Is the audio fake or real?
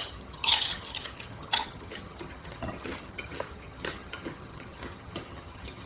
fake